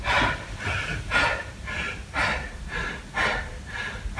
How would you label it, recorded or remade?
remade